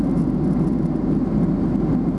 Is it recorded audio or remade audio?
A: recorded